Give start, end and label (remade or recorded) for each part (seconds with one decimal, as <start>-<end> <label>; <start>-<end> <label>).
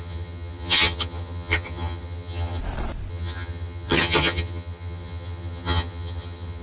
0.0-2.6 remade; 2.6-3.1 recorded; 3.1-6.6 remade